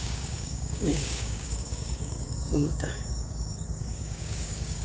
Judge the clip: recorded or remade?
remade